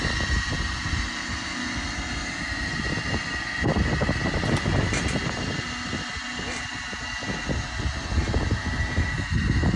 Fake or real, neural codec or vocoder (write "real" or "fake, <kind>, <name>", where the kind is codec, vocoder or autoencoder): real